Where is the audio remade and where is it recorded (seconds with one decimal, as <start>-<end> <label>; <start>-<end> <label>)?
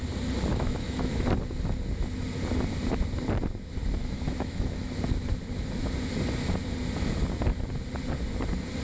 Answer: 0.0-0.5 recorded; 0.5-1.3 remade; 1.3-4.0 recorded; 4.0-4.9 remade; 4.9-8.8 recorded